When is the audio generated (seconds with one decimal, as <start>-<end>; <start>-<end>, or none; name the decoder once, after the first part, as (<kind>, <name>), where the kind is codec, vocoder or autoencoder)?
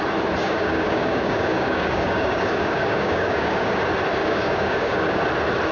0.4-3.8 (codec, DAC); 4.2-5.2